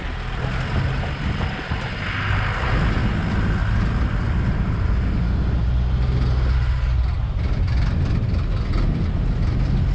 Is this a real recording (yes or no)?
yes